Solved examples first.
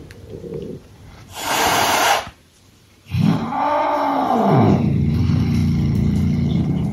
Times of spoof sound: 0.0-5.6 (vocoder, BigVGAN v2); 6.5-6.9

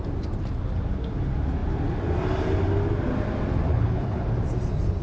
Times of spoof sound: 3.7-4.3 (codec, HILCodec)

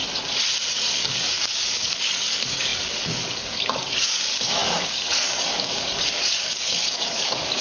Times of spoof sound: 0.7-7.6 (codec, DAC)